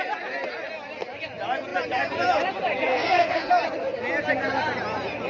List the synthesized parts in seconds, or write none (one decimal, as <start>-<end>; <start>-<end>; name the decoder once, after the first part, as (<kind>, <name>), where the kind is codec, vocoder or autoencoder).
2.9-3.5 (codec, SNAC)